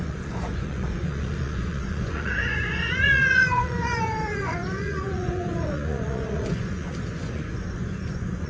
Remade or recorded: remade